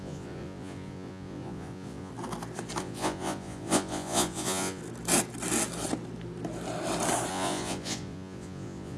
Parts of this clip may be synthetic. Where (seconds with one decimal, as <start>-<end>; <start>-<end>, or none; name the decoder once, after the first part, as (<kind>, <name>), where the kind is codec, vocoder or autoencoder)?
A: 0.0-2.1 (vocoder, Vocos); 2.8-4.8; 7.3-9.0